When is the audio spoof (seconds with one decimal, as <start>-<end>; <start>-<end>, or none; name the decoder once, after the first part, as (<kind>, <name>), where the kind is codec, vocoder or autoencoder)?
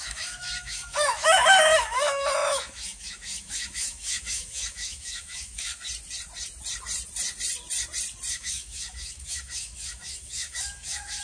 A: 0.0-5.7 (autoencoder, DAC-VAE); 8.3-11.2